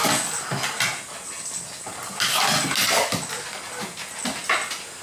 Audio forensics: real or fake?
real